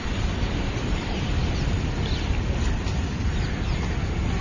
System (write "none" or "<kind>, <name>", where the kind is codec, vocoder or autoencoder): none